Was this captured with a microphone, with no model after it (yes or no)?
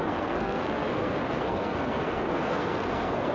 no